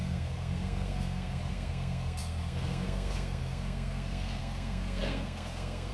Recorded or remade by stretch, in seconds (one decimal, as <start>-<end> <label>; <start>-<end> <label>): 0.0-5.9 remade